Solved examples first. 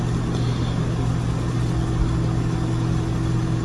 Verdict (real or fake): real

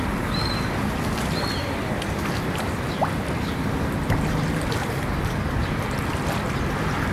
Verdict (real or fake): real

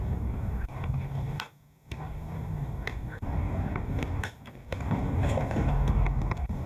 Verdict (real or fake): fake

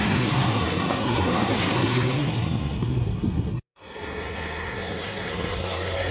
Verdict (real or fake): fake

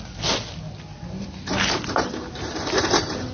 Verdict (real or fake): real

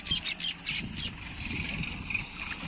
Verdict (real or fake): real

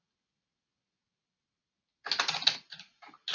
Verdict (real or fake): real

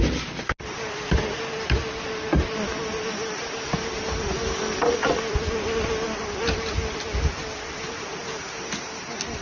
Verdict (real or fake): real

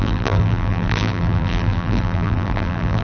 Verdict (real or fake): fake